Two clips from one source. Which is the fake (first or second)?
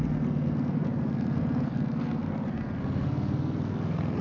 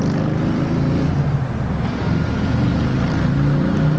first